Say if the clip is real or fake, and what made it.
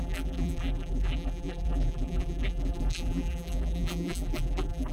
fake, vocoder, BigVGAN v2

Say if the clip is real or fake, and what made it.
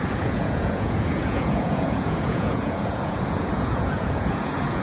fake, vocoder, Vocos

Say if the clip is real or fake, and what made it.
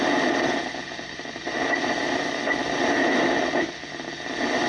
fake, vocoder, BigVGAN v2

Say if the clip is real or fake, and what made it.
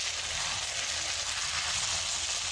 real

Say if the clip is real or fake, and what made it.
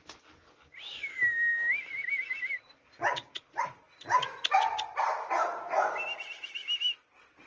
real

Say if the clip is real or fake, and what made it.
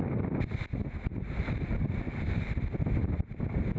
fake, vocoder, BigVGAN v2